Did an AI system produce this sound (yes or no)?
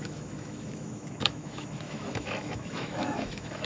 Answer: yes